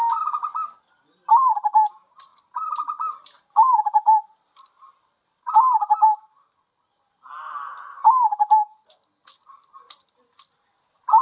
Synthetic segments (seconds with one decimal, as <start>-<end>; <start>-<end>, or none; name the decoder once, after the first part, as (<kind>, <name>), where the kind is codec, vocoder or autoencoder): none